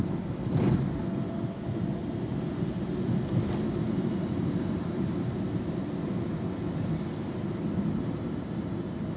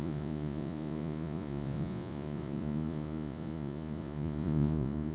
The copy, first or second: second